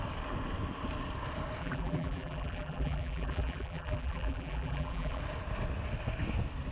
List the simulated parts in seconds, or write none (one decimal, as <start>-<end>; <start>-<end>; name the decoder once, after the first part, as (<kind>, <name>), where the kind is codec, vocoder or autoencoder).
1.6-5.2 (vocoder, BigVGAN v2)